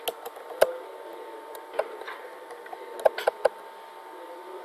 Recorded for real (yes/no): yes